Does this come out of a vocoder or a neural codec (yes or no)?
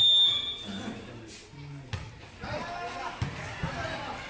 no